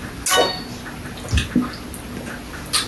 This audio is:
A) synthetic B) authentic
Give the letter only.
B